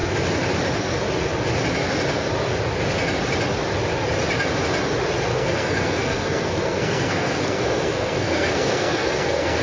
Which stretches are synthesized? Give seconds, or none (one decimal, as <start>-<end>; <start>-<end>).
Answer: 5.3-9.6